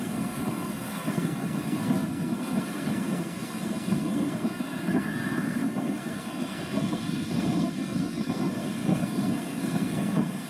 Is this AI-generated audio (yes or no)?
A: yes